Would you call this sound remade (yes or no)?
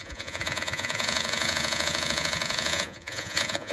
yes